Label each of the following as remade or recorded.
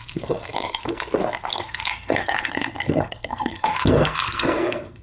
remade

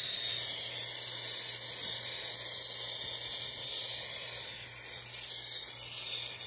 recorded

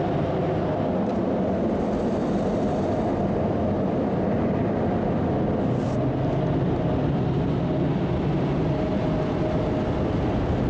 recorded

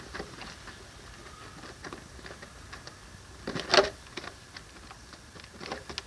recorded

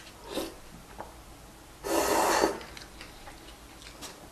recorded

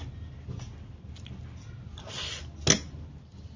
recorded